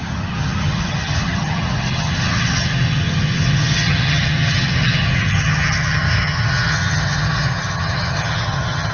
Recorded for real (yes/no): no